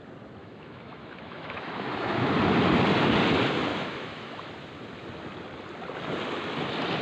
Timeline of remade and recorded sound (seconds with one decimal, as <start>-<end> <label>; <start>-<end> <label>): 0.0-0.4 recorded; 0.4-2.3 remade; 2.3-3.7 recorded; 3.7-4.5 remade; 4.5-7.0 recorded